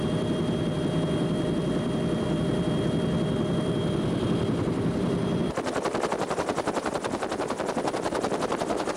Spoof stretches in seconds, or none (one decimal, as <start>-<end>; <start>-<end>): 0.0-9.0